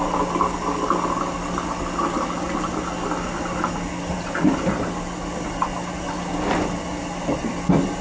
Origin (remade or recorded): recorded